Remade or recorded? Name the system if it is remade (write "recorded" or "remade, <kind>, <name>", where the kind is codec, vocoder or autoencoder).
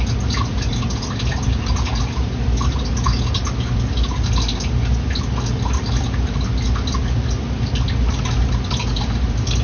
recorded